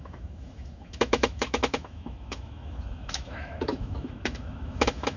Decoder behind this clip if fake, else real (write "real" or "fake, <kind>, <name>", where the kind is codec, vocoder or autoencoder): fake, autoencoder, DAC-VAE